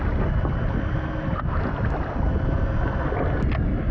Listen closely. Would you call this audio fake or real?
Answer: real